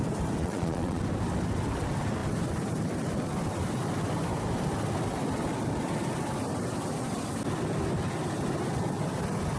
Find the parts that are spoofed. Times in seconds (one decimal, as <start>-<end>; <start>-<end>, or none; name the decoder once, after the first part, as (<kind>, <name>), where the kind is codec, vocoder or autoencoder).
0.4-1.0 (vocoder, Vocos)

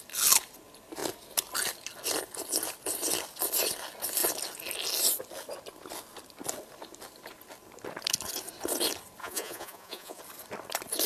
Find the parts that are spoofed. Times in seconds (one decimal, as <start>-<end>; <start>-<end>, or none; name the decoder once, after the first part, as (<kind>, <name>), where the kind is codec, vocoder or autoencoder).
9.2-10.2 (vocoder, Vocos)

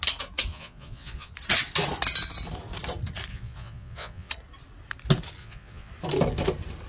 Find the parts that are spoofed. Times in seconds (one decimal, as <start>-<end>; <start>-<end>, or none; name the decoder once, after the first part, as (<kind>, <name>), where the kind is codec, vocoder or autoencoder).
0.5-1.3 (vocoder, Vocos); 3.3-4.3; 5.4-5.9

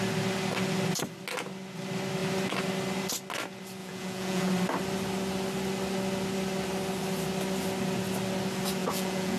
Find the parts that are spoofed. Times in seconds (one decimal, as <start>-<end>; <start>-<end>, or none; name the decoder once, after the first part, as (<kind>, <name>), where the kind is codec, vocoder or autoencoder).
3.8-4.5 (vocoder, Vocos); 8.8-9.4

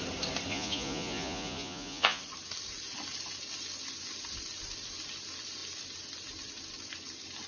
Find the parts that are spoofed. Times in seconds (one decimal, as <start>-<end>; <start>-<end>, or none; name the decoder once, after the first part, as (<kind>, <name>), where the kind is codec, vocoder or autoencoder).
0.5-2.2 (vocoder, Vocos)

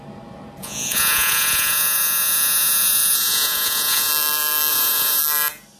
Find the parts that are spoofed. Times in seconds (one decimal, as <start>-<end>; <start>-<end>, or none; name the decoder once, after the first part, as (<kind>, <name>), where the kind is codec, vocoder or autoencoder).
0.6-4.1 (vocoder, Vocos); 4.7-5.2

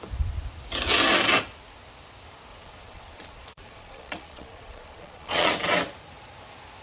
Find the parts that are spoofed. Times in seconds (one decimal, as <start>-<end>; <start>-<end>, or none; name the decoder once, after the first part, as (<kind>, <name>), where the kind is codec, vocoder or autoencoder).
2.5-5.5 (vocoder, Vocos)

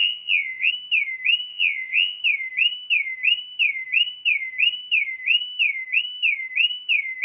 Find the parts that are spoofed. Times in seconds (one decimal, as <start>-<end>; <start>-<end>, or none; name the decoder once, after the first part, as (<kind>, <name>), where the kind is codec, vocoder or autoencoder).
0.0-0.7 (vocoder, Vocos); 1.5-2.2